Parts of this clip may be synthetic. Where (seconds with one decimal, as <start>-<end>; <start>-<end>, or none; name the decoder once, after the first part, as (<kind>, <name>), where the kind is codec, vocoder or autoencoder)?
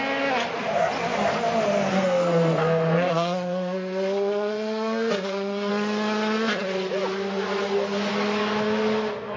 1.9-5.7 (codec, SNAC)